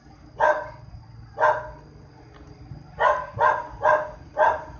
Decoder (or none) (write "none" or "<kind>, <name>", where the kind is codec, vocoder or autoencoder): none